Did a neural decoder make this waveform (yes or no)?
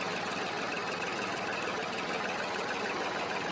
no